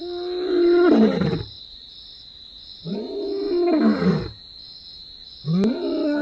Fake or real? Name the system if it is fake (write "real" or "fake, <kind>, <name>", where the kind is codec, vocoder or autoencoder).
real